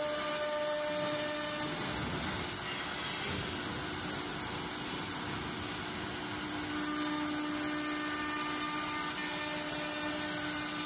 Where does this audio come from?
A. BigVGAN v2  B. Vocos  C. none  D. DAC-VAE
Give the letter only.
C